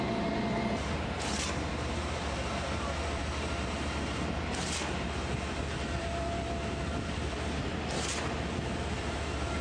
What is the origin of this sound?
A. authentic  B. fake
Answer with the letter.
B